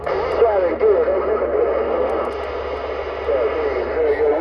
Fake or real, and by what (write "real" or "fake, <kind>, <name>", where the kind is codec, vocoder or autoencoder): real